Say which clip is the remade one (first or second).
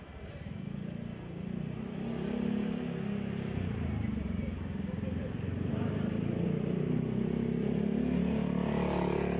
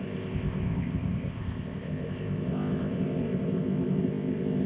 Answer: second